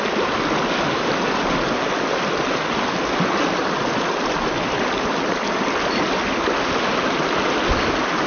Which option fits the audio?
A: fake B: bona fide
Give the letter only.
B